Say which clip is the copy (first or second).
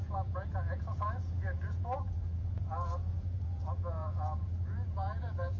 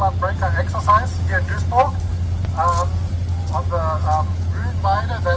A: first